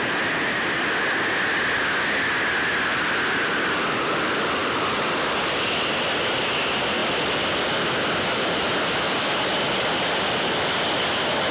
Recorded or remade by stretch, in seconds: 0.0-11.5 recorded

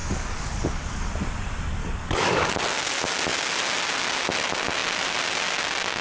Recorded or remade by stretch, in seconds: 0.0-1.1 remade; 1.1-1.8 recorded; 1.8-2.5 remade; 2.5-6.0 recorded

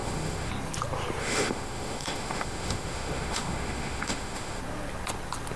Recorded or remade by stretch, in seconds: 0.0-0.5 remade; 0.5-1.2 recorded; 1.2-4.6 remade; 4.6-5.6 recorded

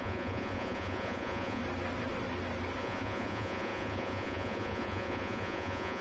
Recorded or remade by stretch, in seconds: 0.0-1.6 remade; 1.6-2.8 recorded; 2.8-6.0 remade

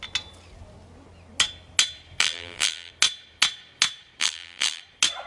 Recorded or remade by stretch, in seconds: 0.0-2.2 recorded; 2.2-2.9 remade; 2.9-4.2 recorded; 4.2-4.8 remade; 4.8-5.3 recorded